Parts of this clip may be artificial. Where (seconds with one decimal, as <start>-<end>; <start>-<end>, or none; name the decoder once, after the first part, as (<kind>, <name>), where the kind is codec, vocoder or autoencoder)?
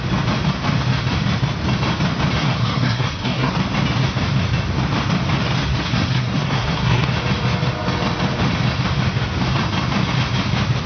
2.4-3.5 (codec, SNAC); 5.7-7.1